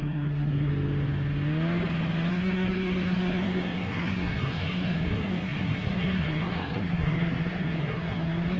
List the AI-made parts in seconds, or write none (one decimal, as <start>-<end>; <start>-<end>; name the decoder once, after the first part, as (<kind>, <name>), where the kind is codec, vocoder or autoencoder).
0.0-0.7 (codec, SNAC); 2.3-8.6